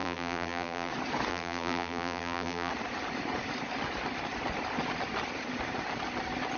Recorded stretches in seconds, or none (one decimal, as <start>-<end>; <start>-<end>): 0.9-1.3; 2.7-6.6